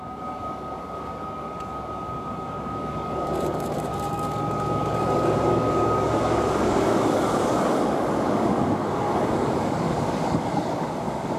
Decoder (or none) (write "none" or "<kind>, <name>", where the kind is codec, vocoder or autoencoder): codec, DAC